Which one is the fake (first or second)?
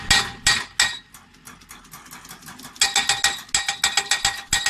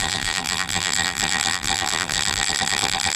second